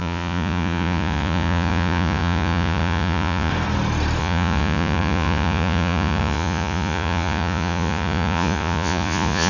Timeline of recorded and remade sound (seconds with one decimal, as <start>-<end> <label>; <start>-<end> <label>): 0.0-3.5 remade; 3.5-4.2 recorded; 4.2-9.5 remade